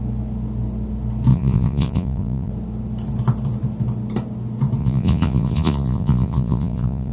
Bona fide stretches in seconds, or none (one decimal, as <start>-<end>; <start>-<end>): 0.0-1.3; 2.5-4.8